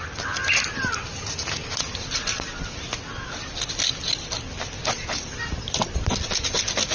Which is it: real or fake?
real